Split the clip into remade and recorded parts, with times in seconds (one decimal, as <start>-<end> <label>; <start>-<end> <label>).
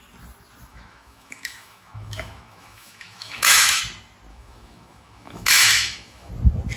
0.0-0.7 recorded; 0.7-3.8 remade; 3.8-4.3 recorded; 4.3-6.3 remade; 6.3-6.8 recorded